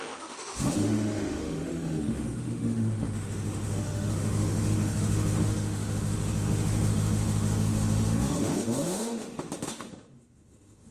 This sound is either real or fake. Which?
fake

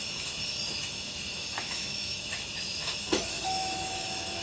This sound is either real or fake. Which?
fake